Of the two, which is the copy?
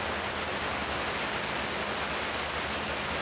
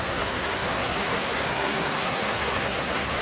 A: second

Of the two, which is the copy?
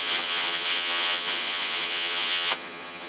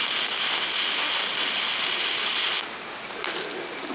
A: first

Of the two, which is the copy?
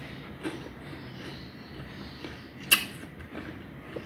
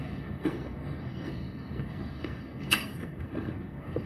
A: second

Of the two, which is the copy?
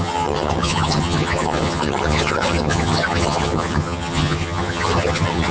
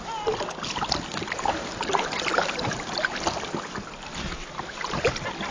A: first